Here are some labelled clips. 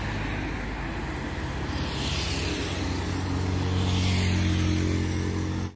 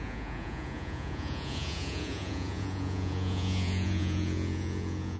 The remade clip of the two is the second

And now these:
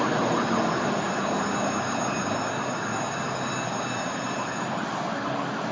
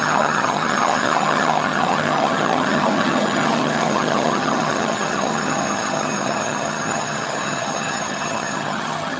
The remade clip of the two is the second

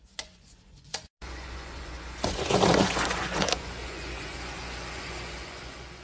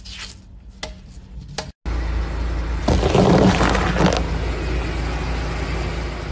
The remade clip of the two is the first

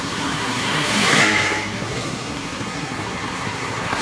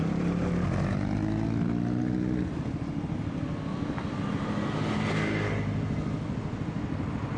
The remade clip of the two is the first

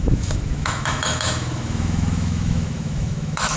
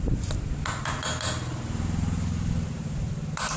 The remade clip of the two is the first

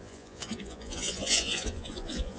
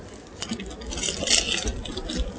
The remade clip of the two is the first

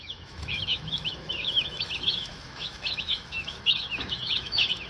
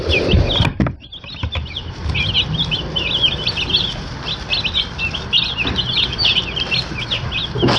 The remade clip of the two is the first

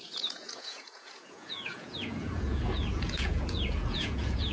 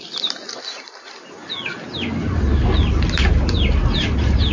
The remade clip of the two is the first